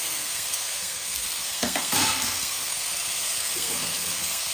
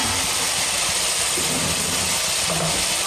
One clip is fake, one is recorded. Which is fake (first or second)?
first